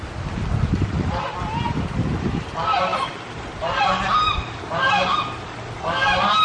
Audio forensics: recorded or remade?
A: recorded